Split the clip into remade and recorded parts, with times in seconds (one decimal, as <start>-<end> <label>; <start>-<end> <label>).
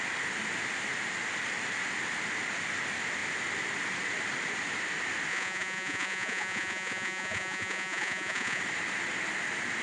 0.0-5.3 recorded; 5.3-8.6 remade; 8.6-9.8 recorded